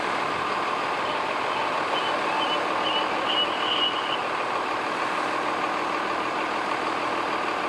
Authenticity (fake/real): real